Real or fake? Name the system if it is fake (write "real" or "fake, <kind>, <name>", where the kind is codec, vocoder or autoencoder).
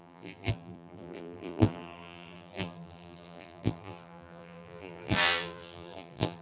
fake, vocoder, BigVGAN v2